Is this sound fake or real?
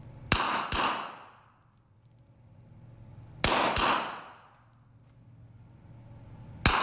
real